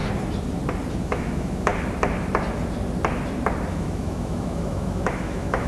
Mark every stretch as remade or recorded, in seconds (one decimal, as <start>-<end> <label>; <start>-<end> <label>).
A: 0.0-0.9 recorded; 0.9-1.7 remade; 1.7-3.7 recorded; 3.7-5.7 remade